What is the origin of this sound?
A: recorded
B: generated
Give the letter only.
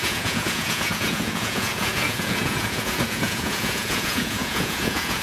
B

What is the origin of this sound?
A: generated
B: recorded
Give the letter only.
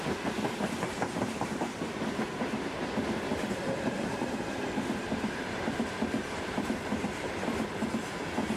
A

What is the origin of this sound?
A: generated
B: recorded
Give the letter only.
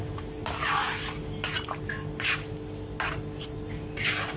B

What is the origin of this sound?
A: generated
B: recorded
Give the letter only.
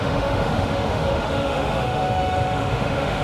A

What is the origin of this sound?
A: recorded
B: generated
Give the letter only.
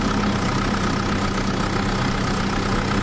A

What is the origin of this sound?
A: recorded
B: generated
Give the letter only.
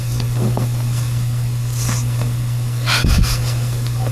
B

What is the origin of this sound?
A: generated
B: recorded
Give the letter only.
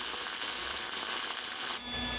B